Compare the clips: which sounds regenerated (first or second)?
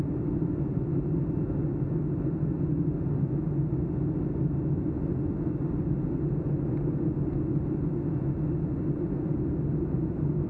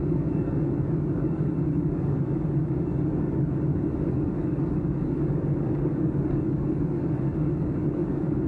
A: second